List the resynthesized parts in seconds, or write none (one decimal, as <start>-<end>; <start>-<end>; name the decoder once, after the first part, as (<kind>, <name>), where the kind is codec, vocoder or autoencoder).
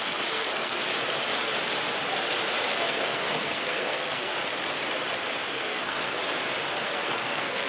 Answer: 0.0-0.9 (codec, SNAC); 2.7-4.3; 5.5-6.2; 6.8-7.7